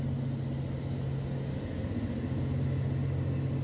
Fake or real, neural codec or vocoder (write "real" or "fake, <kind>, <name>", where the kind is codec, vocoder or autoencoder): real